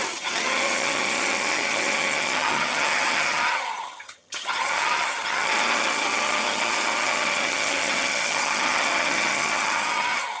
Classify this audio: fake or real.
fake